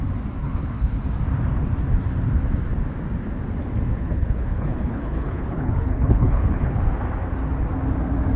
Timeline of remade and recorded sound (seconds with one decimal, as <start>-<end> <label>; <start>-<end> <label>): 0.0-0.4 recorded; 0.4-1.0 remade; 1.0-4.0 recorded; 4.0-6.8 remade; 6.8-8.4 recorded

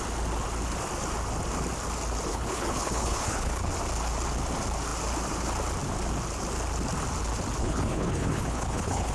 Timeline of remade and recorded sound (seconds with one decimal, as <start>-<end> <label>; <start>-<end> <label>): 0.0-2.3 recorded; 2.3-3.7 remade; 3.7-7.6 recorded; 7.6-9.1 remade

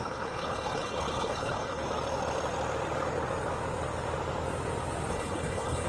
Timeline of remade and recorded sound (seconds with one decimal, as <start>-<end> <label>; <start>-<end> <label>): 0.0-1.8 remade; 1.8-5.1 recorded; 5.1-5.9 remade